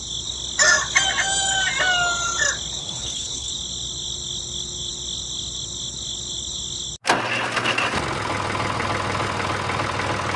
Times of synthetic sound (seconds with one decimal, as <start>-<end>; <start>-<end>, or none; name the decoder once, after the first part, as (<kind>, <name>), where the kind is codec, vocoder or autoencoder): 2.8-3.5 (codec, HILCodec)